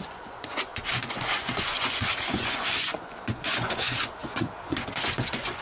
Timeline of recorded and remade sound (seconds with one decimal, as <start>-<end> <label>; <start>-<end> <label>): 0.0-5.6 remade